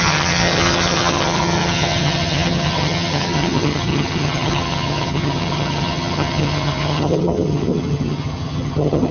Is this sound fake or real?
fake